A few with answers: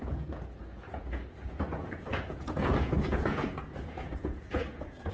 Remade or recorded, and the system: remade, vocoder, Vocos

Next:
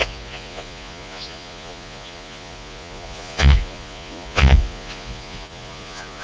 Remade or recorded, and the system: remade, vocoder, Vocos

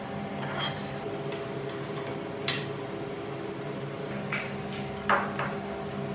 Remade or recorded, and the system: recorded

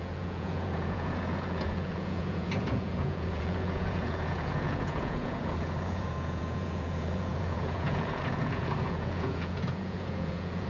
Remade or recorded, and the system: remade, vocoder, Vocos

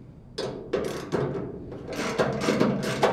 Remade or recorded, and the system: recorded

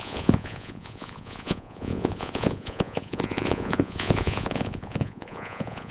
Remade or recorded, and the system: remade, vocoder, Vocos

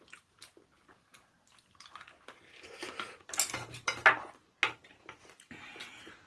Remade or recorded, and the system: recorded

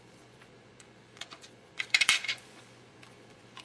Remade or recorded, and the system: remade, vocoder, Vocos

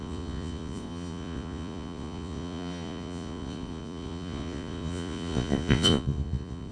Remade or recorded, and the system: remade, vocoder, Vocos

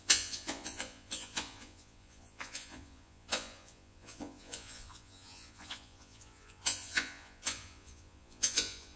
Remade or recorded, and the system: remade, vocoder, Vocos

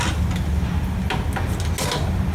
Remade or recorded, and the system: recorded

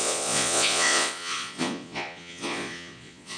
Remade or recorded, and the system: remade, vocoder, Vocos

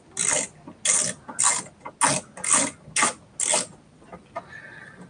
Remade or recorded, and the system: recorded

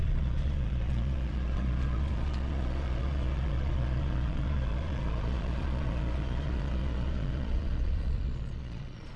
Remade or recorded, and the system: remade, vocoder, Vocos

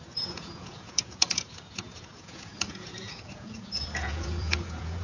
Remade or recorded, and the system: remade, vocoder, Vocos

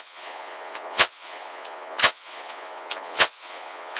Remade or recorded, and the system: remade, vocoder, Vocos